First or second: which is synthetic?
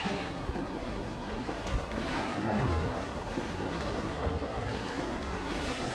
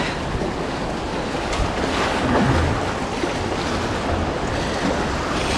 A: first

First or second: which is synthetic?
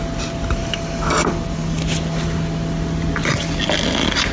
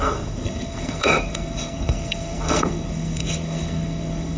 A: second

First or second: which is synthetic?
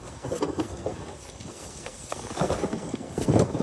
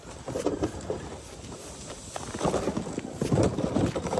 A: first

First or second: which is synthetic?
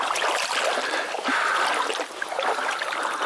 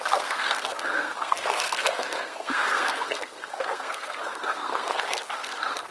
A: second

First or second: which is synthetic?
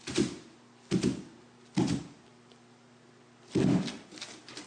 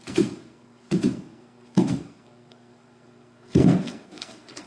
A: second